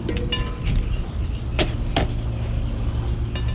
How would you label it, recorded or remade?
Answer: recorded